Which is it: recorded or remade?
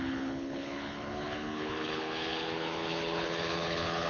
remade